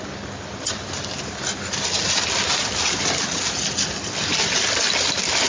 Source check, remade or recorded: recorded